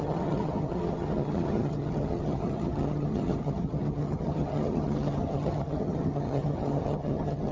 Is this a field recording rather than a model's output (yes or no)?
no